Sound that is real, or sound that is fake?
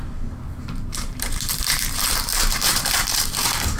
fake